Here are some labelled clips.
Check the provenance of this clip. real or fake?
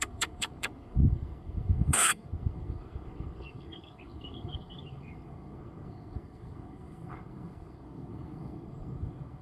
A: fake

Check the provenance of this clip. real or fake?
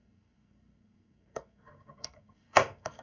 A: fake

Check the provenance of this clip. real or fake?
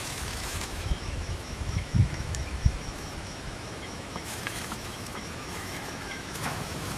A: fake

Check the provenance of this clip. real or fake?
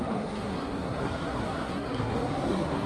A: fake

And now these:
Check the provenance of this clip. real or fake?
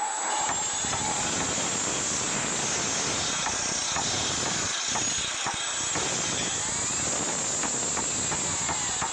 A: real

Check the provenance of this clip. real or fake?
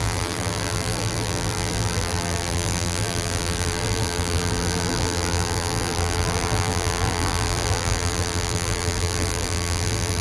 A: fake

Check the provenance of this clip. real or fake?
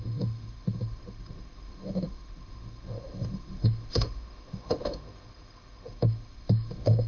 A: fake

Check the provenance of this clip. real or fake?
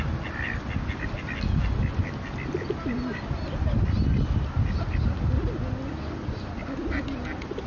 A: real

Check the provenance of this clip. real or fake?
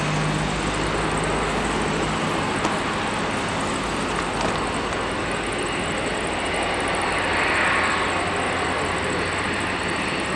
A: real